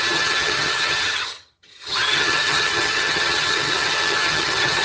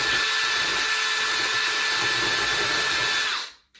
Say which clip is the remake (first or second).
first